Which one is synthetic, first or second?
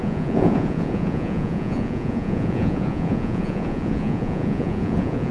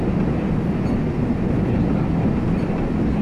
first